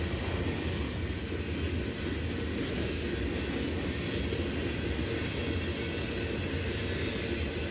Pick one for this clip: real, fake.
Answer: real